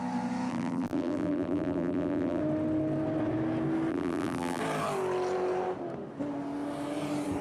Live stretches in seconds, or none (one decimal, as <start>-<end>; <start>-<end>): 0.0-0.5; 2.4-3.9; 4.6-7.4